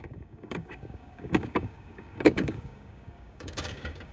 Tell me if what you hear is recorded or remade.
remade